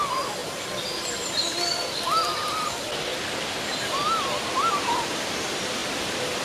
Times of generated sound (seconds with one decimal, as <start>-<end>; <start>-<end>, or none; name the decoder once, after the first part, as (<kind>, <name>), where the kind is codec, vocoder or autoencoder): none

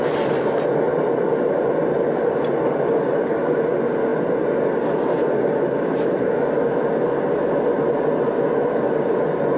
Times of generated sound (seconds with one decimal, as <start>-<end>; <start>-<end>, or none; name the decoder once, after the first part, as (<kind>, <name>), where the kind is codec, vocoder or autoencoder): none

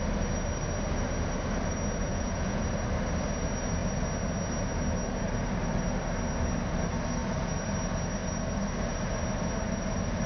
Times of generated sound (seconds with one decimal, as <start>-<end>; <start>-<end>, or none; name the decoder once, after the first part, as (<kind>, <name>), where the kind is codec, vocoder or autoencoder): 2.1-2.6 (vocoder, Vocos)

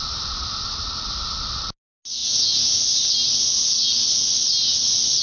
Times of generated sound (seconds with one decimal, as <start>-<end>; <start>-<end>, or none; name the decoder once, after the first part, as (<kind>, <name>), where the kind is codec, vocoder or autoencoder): 2.2-2.8 (vocoder, Vocos)